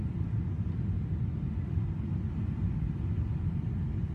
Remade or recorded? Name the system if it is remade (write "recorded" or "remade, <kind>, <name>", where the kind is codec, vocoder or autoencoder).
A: remade, vocoder, BigVGAN v2